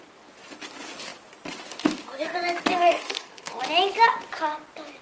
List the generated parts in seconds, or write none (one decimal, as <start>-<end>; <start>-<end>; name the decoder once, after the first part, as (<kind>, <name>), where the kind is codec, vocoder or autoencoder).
2.7-3.6 (codec, SNAC)